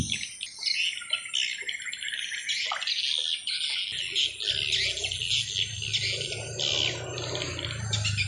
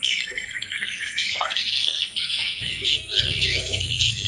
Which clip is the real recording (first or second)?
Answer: first